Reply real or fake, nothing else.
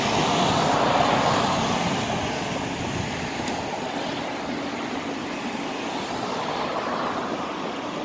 real